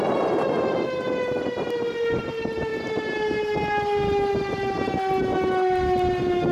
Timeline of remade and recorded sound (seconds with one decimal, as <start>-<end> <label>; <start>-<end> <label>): 0.0-6.5 recorded